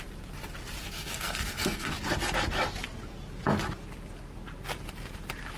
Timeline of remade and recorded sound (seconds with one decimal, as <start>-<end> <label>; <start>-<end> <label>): 0.0-0.8 recorded; 0.8-1.9 remade; 1.9-5.6 recorded